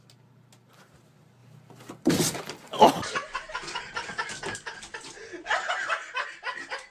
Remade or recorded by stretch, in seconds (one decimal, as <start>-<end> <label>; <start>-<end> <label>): 0.0-1.4 recorded; 1.4-2.1 remade; 2.1-3.6 recorded; 3.6-5.1 remade; 5.1-6.9 recorded